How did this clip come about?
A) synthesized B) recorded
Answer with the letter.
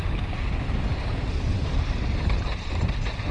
B